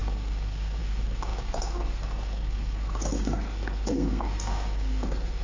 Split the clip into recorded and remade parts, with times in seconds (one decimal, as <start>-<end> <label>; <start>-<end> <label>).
0.0-5.4 remade